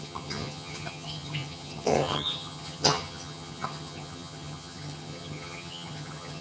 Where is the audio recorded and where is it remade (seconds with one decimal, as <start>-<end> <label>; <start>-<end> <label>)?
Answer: 0.0-6.4 remade